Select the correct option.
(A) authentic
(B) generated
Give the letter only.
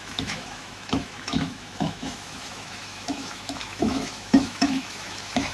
B